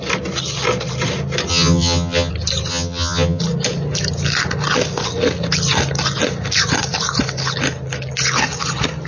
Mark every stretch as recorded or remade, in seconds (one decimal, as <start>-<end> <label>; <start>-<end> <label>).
0.0-1.5 recorded; 1.5-2.3 remade; 2.3-2.7 recorded; 2.7-3.4 remade; 3.4-9.1 recorded